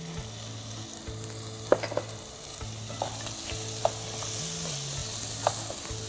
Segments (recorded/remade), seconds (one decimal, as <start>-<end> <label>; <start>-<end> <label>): 0.0-6.1 recorded